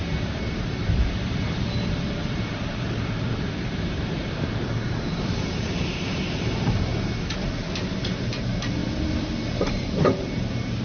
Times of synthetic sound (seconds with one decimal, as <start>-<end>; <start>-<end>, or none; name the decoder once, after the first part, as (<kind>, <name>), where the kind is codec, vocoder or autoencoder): 0.0-0.8 (vocoder, BigVGAN v2); 1.9-6.9; 7.9-8.8; 9.6-10.8